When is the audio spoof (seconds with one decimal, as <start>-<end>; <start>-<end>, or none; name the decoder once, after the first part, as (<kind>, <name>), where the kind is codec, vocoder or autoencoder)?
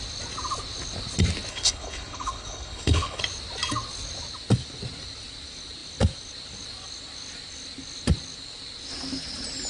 1.5-3.2 (codec, HILCodec)